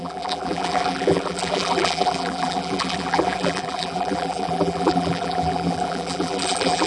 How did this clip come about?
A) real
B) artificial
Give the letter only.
B